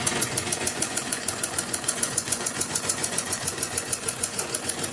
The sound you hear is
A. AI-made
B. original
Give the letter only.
A